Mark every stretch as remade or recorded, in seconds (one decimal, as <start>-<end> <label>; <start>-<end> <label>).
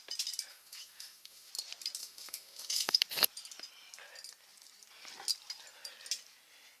0.0-0.5 recorded; 0.5-1.5 remade; 1.5-2.0 recorded; 2.0-3.0 remade; 3.0-6.8 recorded